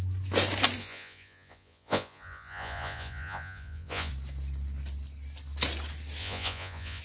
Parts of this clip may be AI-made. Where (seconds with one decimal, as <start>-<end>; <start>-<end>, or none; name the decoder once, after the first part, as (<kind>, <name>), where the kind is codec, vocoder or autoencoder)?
0.8-4.1 (vocoder, Vocos); 6.2-7.0